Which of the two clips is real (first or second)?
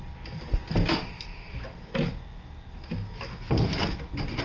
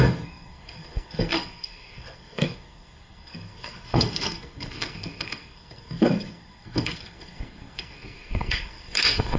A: first